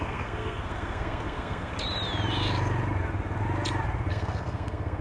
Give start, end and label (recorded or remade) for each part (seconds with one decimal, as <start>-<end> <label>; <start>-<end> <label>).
0.0-1.7 remade; 1.7-4.1 recorded; 4.1-5.0 remade